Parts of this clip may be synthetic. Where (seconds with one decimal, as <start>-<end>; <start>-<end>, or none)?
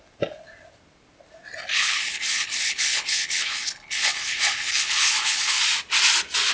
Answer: 1.7-5.6